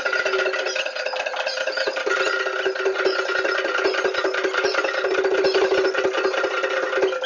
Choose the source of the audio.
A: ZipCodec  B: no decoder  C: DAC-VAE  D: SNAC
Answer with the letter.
B